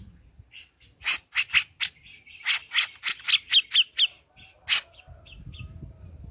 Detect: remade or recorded recorded